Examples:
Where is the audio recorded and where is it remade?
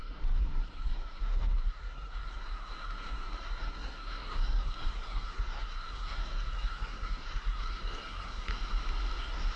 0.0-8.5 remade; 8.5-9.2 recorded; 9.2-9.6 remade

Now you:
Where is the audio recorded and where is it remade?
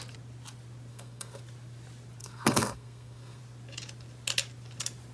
0.0-0.9 recorded; 0.9-1.4 remade; 1.4-2.2 recorded; 2.2-3.4 remade; 3.4-5.1 recorded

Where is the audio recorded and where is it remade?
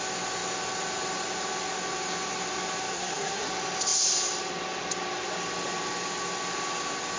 0.0-2.9 recorded; 2.9-3.5 remade; 3.5-7.2 recorded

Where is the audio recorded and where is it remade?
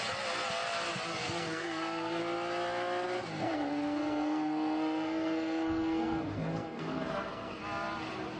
0.0-1.2 recorded; 1.2-2.2 remade; 2.2-3.4 recorded; 3.4-7.6 remade; 7.6-8.4 recorded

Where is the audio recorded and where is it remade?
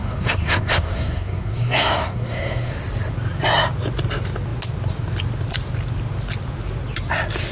0.0-2.7 remade; 2.7-7.5 recorded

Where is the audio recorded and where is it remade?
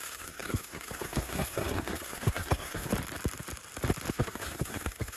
0.0-2.9 remade; 2.9-4.1 recorded; 4.1-5.2 remade